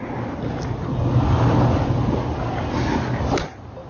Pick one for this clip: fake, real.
real